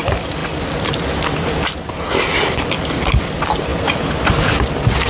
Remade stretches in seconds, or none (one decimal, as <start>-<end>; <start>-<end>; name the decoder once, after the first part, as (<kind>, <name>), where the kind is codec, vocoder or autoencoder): none

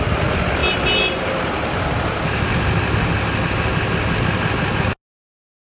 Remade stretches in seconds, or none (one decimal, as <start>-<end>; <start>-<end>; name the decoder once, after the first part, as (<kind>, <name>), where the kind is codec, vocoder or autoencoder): none

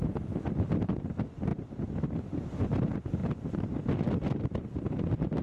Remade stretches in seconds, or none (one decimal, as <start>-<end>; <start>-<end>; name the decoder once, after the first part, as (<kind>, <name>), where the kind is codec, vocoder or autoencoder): 3.2-3.8 (vocoder, BigVGAN v2)

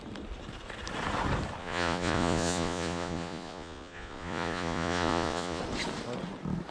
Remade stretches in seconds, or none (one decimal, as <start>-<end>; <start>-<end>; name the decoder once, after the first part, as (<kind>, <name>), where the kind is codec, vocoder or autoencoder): 1.6-5.6 (vocoder, Vocos)

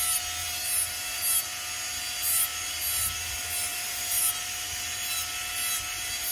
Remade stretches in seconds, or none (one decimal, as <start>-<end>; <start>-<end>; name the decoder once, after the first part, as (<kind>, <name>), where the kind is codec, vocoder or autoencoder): 0.4-1.2 (vocoder, BigVGAN v2); 3.7-4.3